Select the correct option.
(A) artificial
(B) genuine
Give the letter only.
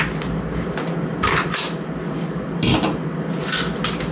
B